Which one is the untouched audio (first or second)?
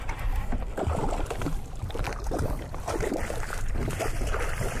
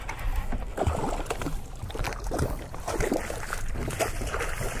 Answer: second